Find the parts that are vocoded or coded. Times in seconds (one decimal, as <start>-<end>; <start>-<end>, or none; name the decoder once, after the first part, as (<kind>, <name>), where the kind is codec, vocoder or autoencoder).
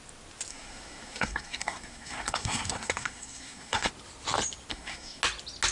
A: 0.5-3.9 (codec, SNAC); 4.7-5.2